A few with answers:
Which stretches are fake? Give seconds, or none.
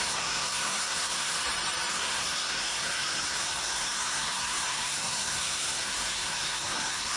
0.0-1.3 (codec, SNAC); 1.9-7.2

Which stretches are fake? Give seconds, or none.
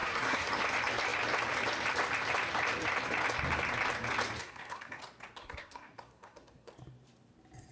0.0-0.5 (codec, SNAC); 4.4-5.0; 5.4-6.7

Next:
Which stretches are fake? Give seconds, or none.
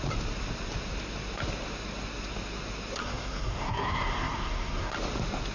3.0-4.9 (codec, SNAC)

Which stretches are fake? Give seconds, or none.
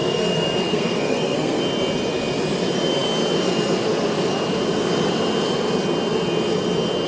0.0-1.6 (codec, SNAC)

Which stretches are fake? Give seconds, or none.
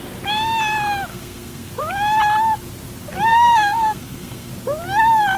1.1-1.7 (codec, SNAC); 3.3-4.5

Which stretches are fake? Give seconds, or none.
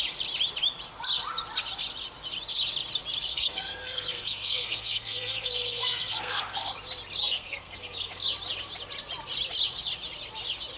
3.3-6.7 (codec, SNAC); 7.2-8.2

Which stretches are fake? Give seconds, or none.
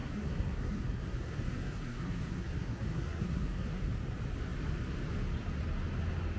0.0-3.8 (codec, SNAC)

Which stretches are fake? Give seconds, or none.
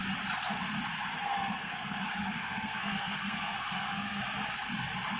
1.1-4.2 (codec, SNAC)